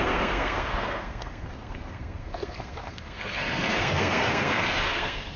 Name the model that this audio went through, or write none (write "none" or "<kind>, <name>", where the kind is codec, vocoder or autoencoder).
codec, SNAC